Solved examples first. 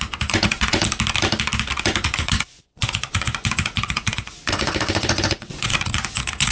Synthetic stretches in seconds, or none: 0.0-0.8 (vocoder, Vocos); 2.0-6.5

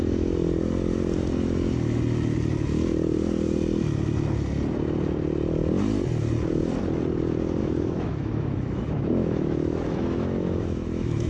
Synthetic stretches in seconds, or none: 7.6-11.3 (autoencoder, DAC-VAE)

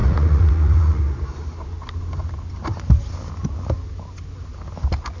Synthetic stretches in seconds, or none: 0.0-1.0 (vocoder, Vocos)

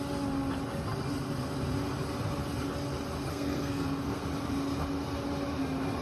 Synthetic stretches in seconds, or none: 3.3-4.2 (codec, SNAC)

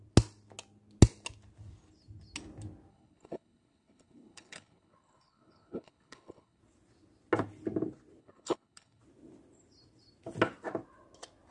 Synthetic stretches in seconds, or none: 2.9-6.6 (codec, HILCodec); 8.2-9.0

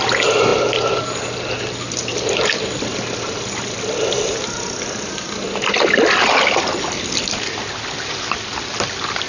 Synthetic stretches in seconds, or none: none